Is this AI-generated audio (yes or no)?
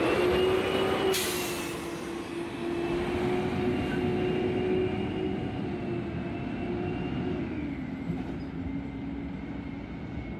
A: no